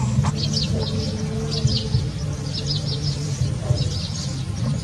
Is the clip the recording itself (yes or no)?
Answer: yes